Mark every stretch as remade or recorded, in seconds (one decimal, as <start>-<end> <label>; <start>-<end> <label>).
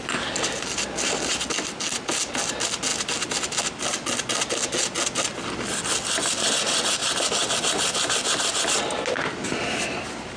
0.0-10.4 recorded